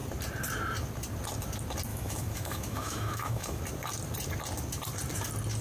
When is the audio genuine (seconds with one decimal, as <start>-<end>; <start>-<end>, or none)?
0.0-1.9; 3.6-5.6